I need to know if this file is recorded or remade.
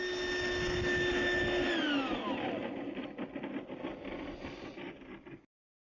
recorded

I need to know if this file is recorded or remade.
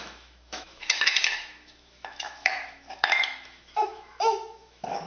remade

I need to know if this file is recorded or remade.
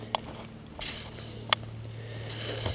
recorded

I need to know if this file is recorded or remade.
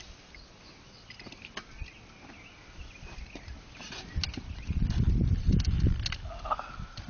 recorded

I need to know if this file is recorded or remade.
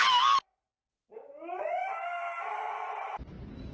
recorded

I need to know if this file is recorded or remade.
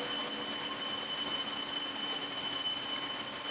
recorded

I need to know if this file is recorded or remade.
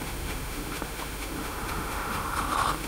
remade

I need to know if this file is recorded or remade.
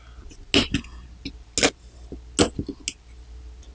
recorded